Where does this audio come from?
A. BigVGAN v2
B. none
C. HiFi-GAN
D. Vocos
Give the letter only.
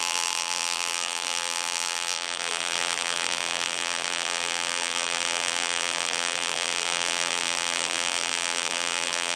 A